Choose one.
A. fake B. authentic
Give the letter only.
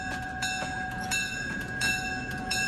A